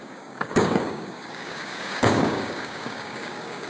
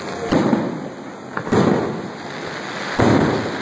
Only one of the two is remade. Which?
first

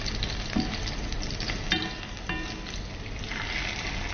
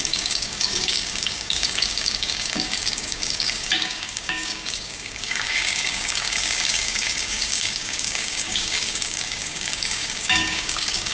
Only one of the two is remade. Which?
second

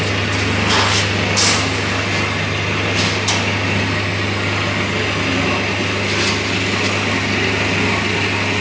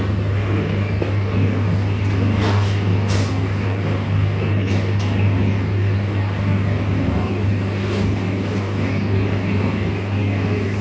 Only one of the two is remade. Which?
second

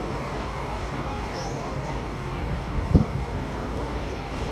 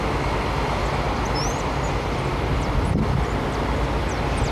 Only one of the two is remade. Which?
first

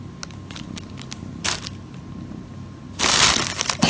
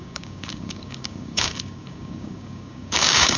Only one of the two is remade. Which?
second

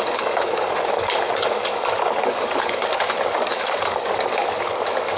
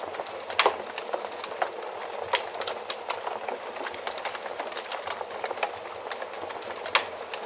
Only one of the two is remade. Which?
first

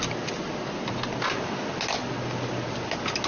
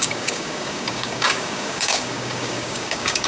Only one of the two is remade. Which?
second